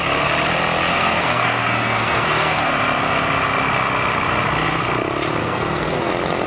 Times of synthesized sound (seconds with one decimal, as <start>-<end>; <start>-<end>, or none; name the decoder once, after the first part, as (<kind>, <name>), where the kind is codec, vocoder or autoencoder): 0.9-2.7 (codec, SNAC); 5.4-6.1